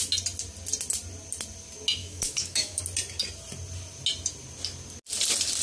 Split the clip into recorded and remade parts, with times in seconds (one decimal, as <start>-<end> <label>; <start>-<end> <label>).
0.0-2.0 recorded; 2.0-2.8 remade; 2.8-5.6 recorded